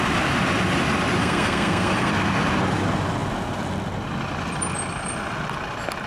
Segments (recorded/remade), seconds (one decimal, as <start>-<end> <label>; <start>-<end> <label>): 0.0-1.2 recorded; 1.2-2.1 remade; 2.1-6.1 recorded